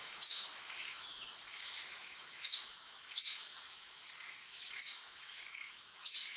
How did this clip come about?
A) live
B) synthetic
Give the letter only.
B